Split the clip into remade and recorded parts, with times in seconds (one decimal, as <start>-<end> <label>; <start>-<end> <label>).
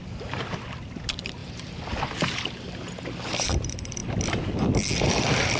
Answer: 0.0-1.4 recorded; 1.4-2.0 remade; 2.0-5.6 recorded